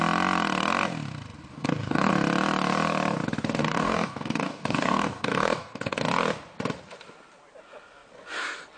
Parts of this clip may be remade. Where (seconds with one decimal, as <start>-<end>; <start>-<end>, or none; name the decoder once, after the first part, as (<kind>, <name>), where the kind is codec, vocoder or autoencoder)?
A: 1.5-2.1 (codec, DAC); 3.6-6.0